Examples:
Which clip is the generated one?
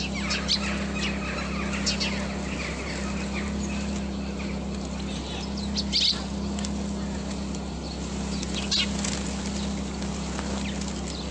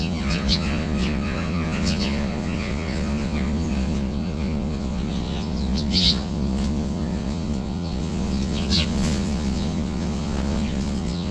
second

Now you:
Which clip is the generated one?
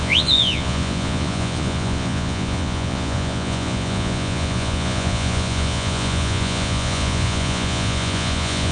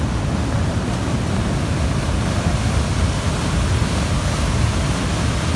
first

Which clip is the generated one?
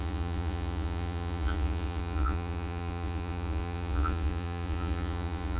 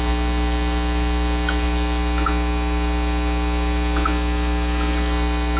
first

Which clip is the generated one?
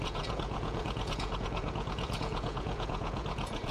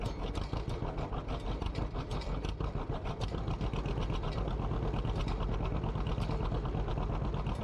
first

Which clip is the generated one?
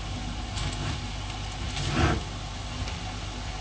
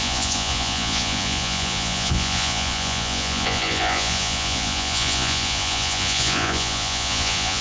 second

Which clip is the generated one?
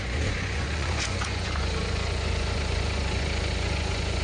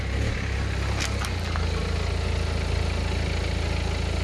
first